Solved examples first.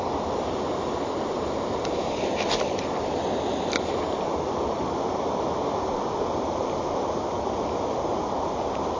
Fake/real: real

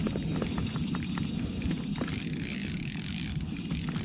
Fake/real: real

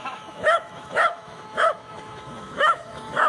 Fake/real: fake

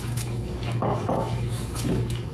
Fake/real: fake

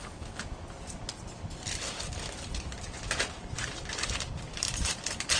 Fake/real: real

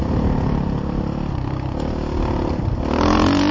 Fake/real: real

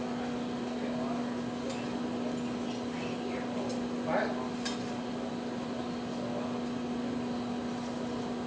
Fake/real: real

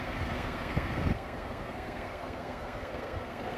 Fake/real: fake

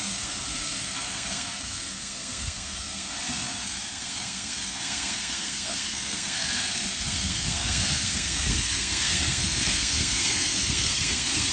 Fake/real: fake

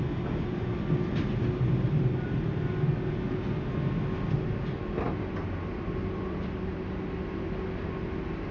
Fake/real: real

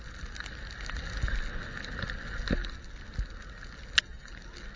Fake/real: real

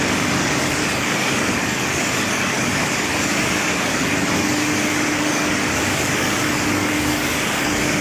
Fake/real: fake